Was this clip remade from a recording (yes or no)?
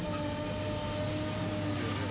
no